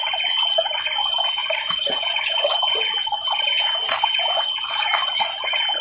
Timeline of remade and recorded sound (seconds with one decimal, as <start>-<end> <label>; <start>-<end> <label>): 0.0-1.4 recorded; 1.4-1.9 remade; 1.9-5.8 recorded